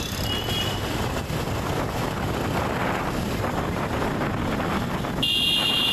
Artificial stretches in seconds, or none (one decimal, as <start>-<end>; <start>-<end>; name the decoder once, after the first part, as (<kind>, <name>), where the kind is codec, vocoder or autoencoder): 2.8-4.0 (vocoder, BigVGAN v2)

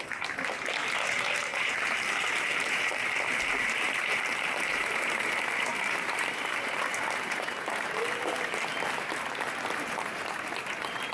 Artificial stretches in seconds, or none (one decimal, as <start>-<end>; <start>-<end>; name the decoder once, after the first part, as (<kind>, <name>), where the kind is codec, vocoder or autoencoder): 1.5-5.3 (vocoder, BigVGAN v2); 5.7-11.1

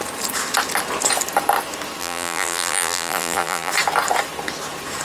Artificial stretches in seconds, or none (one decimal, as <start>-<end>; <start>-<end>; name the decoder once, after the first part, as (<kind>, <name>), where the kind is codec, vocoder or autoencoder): 2.0-3.7 (vocoder, BigVGAN v2)

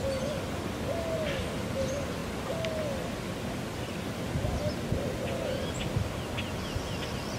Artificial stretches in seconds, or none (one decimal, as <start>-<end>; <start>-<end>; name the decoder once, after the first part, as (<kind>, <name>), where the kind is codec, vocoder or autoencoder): none

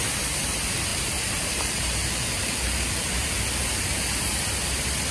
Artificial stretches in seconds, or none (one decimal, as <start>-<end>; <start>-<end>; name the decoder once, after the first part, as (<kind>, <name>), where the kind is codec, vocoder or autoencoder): 0.9-3.4 (vocoder, BigVGAN v2)

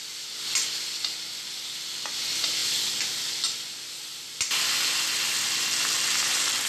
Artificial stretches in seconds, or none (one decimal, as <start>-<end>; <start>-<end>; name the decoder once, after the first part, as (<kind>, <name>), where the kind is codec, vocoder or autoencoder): none

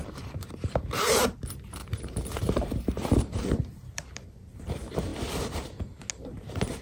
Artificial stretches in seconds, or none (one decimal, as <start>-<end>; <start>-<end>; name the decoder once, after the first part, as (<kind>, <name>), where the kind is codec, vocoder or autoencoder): 0.0-5.1 (vocoder, BigVGAN v2); 6.1-6.8

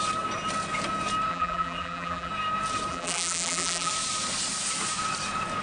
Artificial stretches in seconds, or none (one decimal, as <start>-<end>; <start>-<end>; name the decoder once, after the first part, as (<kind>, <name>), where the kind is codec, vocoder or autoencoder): 1.3-2.3 (vocoder, BigVGAN v2); 2.9-3.9